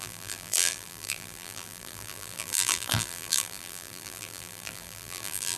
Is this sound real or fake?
fake